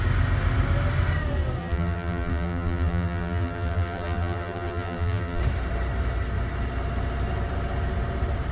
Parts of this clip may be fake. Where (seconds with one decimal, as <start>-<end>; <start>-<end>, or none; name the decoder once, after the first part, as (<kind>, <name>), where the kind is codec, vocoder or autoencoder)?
1.6-5.4 (vocoder, BigVGAN v2)